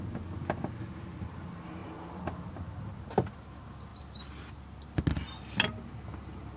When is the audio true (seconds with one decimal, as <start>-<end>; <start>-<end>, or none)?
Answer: 0.0-6.6